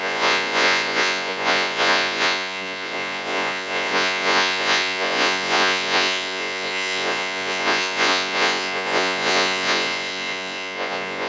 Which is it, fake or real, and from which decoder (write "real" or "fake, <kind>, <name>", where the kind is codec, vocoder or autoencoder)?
fake, vocoder, Vocos